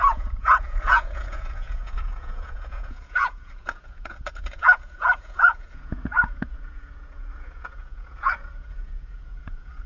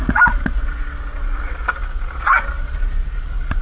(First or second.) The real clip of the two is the second